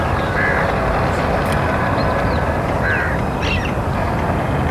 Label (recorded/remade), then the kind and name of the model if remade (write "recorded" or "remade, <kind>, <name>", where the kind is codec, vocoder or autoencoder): recorded